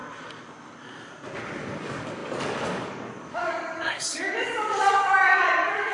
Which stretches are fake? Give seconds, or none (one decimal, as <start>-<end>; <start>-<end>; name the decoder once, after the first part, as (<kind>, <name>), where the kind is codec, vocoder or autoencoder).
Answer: 1.4-5.9 (codec, DAC)